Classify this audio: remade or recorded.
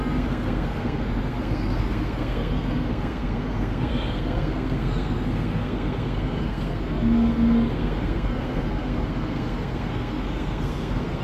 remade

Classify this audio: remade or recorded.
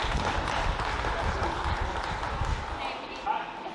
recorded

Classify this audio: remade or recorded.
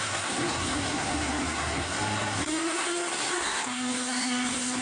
remade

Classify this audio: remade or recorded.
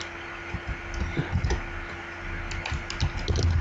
recorded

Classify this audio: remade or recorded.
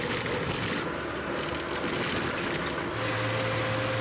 recorded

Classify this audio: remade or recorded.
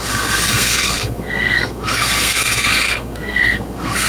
remade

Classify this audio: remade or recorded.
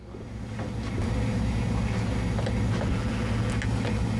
recorded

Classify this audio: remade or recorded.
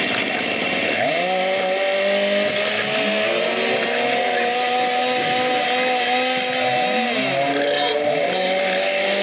recorded